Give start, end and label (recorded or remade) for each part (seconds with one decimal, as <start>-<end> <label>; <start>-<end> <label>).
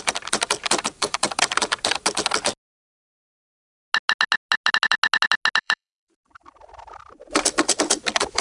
0.0-1.6 remade; 1.6-5.6 recorded; 5.6-8.4 remade